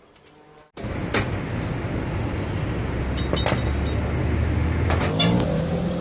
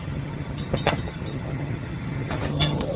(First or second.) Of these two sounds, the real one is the first